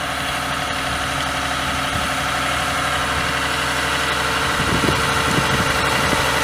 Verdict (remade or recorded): recorded